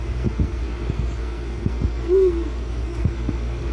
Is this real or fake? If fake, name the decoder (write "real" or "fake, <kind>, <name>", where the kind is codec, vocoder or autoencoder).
fake, codec, SNAC